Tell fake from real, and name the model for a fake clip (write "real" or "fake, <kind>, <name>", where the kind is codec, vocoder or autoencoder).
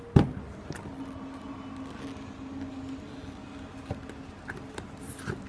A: real